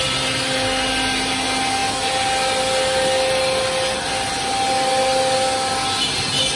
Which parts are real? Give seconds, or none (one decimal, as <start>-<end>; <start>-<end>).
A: 0.0-6.6